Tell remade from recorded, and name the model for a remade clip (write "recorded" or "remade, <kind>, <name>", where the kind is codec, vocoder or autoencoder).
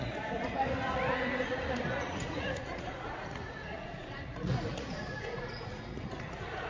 remade, vocoder, Vocos